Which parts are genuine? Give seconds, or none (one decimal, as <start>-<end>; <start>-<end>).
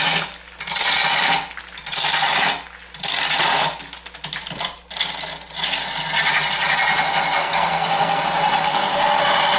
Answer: 0.0-7.4; 8.2-8.6; 9.2-9.6